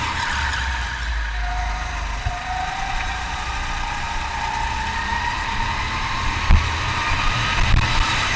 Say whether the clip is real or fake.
real